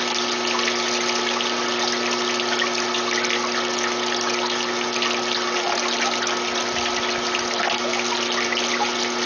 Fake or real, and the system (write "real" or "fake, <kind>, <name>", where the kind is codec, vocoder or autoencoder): real